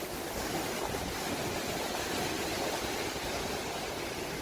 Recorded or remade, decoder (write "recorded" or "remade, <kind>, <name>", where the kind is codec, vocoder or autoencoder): recorded